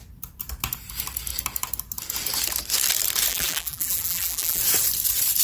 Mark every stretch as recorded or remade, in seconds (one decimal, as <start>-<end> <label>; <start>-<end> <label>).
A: 0.0-3.3 recorded; 3.3-4.6 remade; 4.6-5.4 recorded